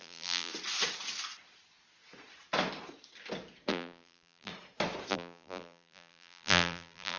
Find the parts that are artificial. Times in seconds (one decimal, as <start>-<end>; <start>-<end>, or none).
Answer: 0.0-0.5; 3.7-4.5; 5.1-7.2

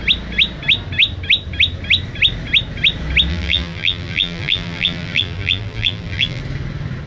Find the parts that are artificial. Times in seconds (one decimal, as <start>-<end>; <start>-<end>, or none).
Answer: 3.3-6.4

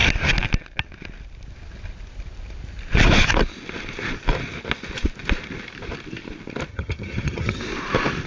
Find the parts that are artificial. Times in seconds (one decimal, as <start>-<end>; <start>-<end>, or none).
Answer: 6.7-7.6